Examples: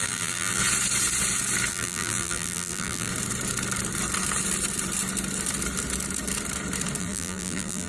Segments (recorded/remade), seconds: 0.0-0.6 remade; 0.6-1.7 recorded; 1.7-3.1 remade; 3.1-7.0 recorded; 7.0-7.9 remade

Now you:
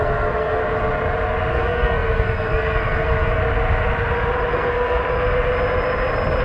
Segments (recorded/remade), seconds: 0.0-0.6 remade; 0.6-1.5 recorded; 1.5-3.4 remade; 3.4-4.5 recorded; 4.5-5.0 remade; 5.0-6.4 recorded

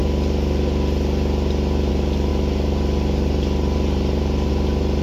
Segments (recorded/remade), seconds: 0.0-1.9 recorded; 1.9-5.0 remade